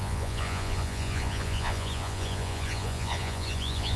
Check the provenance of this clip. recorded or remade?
remade